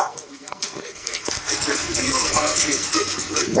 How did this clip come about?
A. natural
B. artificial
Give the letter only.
B